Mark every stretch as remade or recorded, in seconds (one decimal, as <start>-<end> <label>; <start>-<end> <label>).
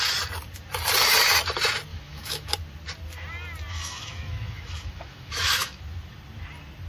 0.0-1.9 recorded; 1.9-2.5 remade; 2.5-3.7 recorded; 3.7-5.8 remade; 5.8-6.9 recorded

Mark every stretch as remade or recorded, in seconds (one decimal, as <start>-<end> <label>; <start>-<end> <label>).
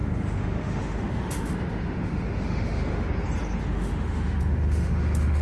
0.0-3.1 remade; 3.1-3.6 recorded; 3.6-5.4 remade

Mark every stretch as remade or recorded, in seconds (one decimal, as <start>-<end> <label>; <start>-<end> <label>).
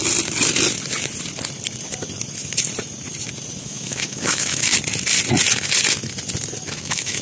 0.0-3.6 recorded; 3.6-4.7 remade; 4.7-6.8 recorded; 6.8-7.2 remade